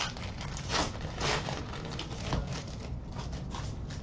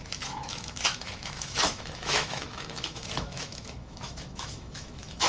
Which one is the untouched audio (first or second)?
first